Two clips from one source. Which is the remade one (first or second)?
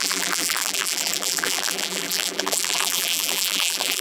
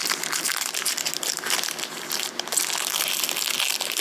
first